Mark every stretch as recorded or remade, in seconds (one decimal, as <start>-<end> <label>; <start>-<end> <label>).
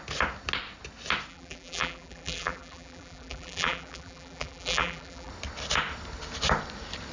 0.0-1.3 recorded; 1.3-5.3 remade; 5.3-7.1 recorded